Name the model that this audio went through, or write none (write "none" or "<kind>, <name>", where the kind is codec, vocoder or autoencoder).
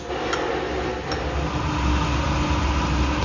none